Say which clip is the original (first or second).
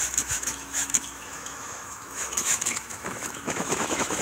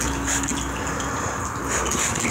second